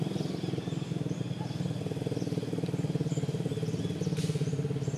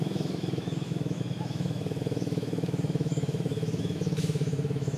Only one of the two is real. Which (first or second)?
first